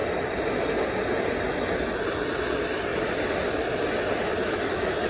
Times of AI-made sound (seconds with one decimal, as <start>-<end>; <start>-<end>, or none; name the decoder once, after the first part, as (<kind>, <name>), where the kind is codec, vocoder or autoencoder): 4.4-5.1 (autoencoder, DAC-VAE)